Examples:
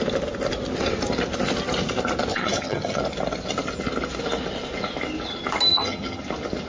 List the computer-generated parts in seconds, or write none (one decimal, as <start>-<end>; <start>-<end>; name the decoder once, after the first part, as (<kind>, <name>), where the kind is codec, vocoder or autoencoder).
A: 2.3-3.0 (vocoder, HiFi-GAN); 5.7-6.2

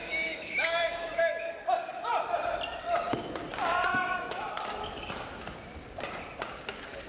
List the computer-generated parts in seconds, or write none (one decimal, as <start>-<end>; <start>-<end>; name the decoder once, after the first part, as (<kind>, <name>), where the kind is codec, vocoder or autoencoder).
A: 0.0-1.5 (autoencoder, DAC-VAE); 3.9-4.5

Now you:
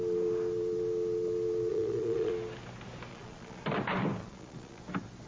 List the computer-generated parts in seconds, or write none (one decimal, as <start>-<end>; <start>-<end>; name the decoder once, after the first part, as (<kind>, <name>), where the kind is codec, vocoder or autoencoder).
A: 1.7-2.3 (vocoder, Vocos); 3.1-3.6; 4.2-4.8

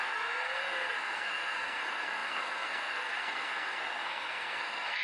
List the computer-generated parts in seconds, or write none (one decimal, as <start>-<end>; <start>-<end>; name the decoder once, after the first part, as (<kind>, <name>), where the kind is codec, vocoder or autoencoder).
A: 0.0-5.0 (codec, SNAC)